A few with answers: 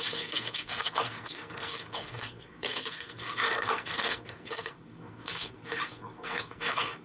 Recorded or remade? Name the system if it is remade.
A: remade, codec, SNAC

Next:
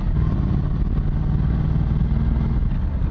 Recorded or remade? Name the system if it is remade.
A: recorded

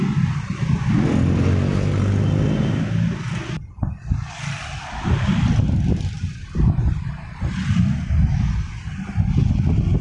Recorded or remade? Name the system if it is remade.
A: recorded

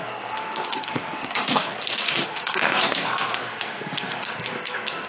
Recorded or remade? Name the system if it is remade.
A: remade, codec, SNAC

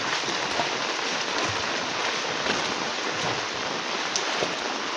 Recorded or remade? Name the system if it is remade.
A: recorded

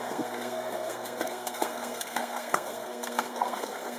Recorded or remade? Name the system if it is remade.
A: remade, codec, SNAC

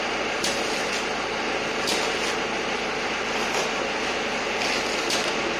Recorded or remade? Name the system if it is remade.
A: recorded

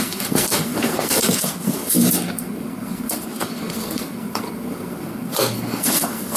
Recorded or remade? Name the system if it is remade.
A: remade, codec, SNAC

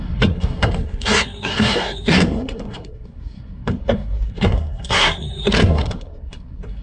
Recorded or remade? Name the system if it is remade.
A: remade, codec, SNAC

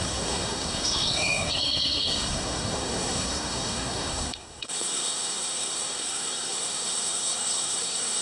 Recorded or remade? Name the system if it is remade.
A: remade, codec, SNAC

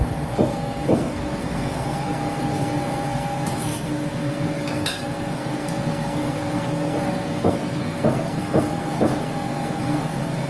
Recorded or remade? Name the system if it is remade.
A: remade, codec, SNAC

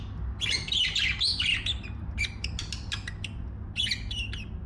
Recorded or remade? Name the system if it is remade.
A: recorded